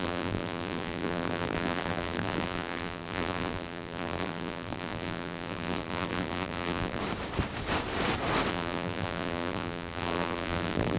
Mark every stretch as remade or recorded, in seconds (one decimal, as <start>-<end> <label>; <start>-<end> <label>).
0.0-7.0 remade; 7.0-8.5 recorded; 8.5-11.0 remade